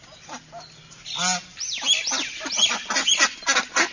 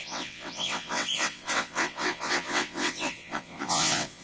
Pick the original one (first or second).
first